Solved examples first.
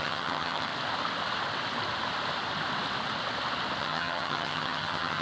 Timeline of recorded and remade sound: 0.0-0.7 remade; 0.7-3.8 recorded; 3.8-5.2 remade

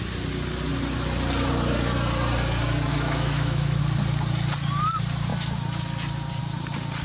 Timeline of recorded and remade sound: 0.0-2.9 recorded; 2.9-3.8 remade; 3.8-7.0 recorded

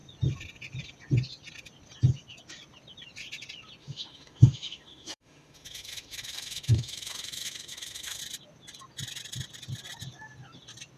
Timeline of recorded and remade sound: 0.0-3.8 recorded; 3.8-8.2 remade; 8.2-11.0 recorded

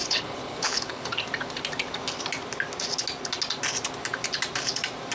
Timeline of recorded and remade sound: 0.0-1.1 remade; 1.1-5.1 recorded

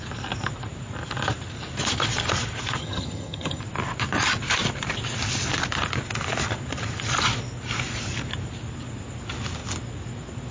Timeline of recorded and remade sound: 0.0-2.8 recorded; 2.8-3.6 remade; 3.6-10.5 recorded

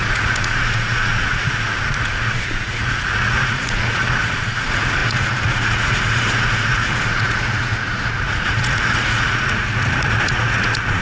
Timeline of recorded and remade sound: 0.0-11.0 remade

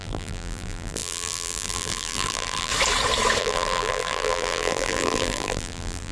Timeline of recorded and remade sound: 0.0-2.7 remade; 2.7-3.4 recorded; 3.4-6.1 remade

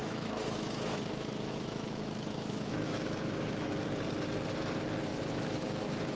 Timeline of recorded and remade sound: 0.0-3.7 remade; 3.7-5.1 recorded; 5.1-6.2 remade